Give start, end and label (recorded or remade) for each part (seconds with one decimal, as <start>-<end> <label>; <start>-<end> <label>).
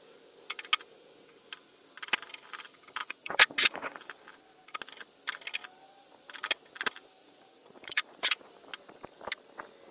0.0-3.0 recorded; 3.0-4.0 remade; 4.0-7.2 recorded; 7.2-8.4 remade; 8.4-9.9 recorded